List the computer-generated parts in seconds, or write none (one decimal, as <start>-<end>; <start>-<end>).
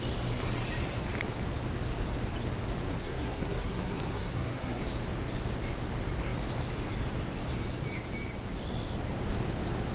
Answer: 3.0-4.8